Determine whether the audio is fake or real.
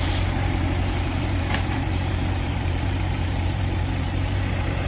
fake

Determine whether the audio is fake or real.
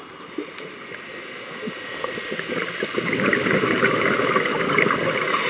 real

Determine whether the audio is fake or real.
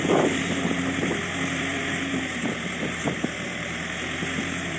fake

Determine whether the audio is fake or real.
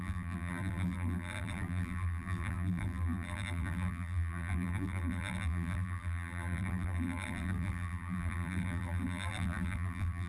fake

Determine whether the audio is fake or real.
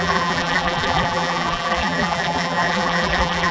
fake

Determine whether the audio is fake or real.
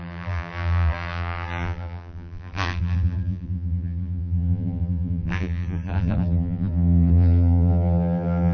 fake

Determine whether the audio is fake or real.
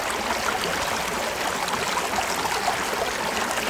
real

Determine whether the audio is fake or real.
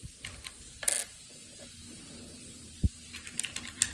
real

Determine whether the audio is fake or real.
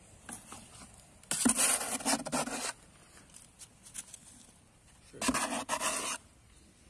real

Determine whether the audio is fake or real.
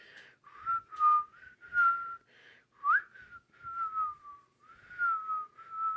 real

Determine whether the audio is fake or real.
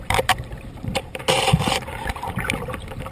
fake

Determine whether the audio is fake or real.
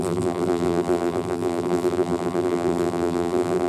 fake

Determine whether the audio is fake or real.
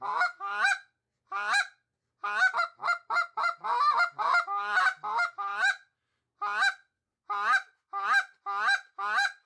real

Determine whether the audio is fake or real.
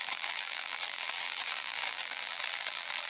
fake